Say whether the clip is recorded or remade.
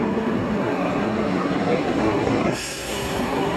remade